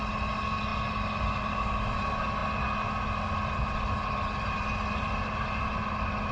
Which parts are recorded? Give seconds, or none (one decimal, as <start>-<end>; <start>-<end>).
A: 0.0-6.3